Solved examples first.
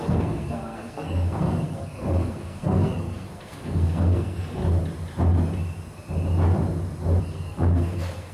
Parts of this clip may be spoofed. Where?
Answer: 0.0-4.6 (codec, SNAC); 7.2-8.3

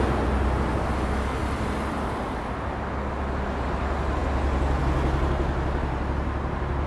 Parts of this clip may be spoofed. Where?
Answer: none